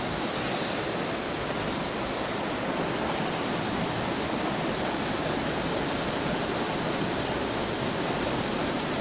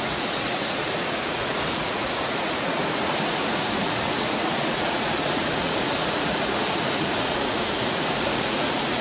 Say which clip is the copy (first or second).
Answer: second